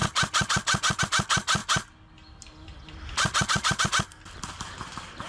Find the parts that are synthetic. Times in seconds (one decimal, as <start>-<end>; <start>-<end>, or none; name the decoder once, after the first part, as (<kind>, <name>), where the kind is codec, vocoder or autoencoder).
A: none